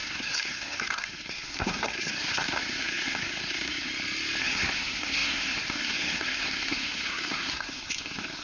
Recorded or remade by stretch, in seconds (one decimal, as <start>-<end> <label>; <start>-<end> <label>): 0.0-3.9 remade; 3.9-4.4 recorded; 4.4-8.4 remade